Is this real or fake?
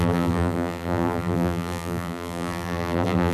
fake